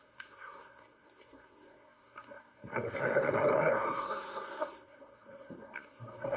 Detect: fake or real fake